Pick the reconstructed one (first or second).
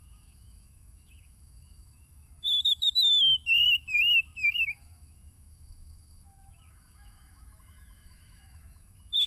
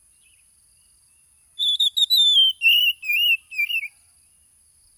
first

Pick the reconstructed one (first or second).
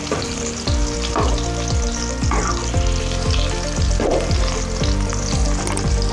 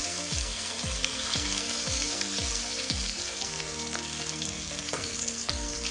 second